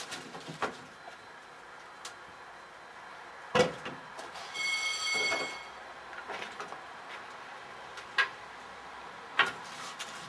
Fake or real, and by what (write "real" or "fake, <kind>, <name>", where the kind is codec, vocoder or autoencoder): real